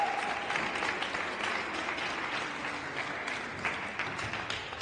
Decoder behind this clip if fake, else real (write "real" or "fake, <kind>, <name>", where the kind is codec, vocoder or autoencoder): real